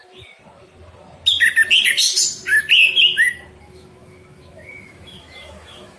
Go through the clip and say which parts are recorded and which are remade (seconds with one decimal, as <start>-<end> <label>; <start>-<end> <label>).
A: 0.0-3.6 recorded; 3.6-6.0 remade